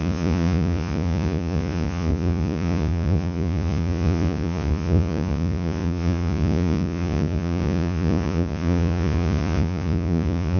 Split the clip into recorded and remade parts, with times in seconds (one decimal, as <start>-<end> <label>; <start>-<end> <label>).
0.0-10.6 remade